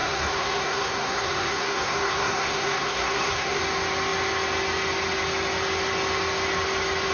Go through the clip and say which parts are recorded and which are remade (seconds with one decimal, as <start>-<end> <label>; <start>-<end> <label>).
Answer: 0.0-3.6 remade; 3.6-7.1 recorded